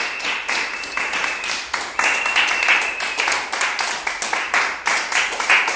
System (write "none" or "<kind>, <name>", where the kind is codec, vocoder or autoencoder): none